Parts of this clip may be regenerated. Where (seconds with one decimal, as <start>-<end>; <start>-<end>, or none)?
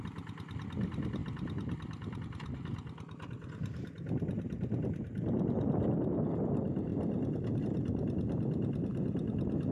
none